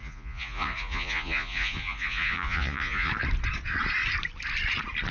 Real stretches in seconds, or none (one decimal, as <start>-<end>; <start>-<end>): 3.1-5.1